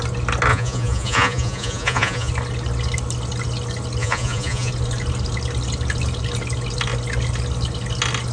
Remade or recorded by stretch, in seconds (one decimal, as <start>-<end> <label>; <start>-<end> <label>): 0.0-0.5 recorded; 0.5-2.3 remade; 2.3-4.0 recorded; 4.0-4.7 remade; 4.7-8.3 recorded